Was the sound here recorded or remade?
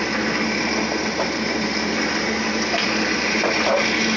recorded